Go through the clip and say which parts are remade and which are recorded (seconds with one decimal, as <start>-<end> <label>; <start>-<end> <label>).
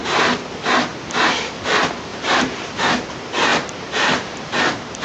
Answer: 0.0-2.1 recorded; 2.1-2.8 remade; 2.8-3.5 recorded; 3.5-4.6 remade; 4.6-5.0 recorded